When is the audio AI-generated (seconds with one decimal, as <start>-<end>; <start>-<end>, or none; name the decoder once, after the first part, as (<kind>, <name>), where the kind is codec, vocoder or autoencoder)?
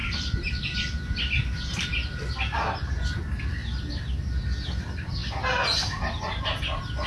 none